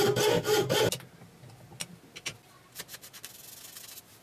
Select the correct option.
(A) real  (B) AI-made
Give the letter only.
A